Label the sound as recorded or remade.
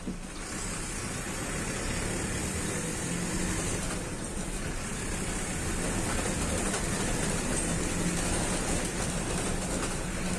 recorded